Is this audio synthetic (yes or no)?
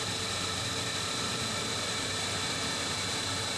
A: yes